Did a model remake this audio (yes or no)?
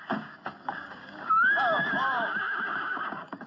yes